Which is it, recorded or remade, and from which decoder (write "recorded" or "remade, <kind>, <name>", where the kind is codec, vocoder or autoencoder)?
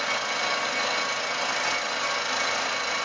recorded